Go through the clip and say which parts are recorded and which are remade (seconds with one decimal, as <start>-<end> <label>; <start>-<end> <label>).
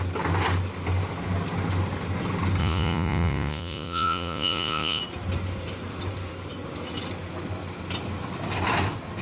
0.0-2.6 recorded; 2.6-5.0 remade; 5.0-9.2 recorded